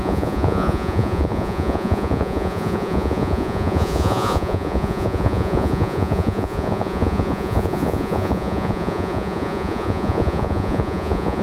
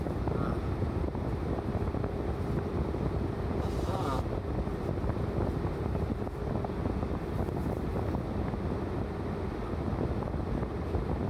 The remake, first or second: first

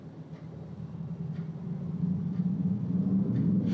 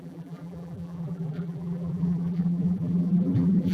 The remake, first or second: second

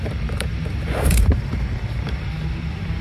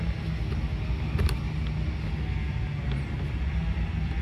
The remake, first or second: first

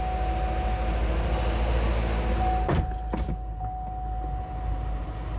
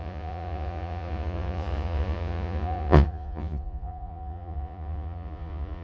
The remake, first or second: second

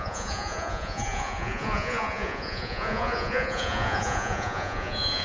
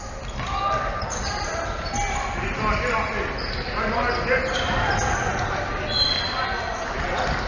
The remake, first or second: first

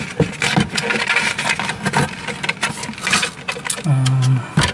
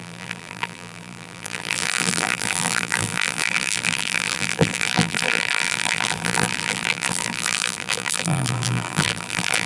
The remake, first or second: second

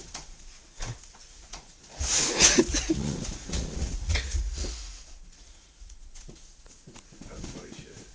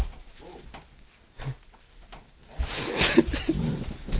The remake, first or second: first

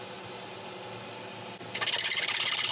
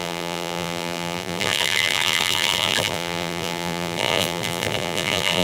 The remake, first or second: second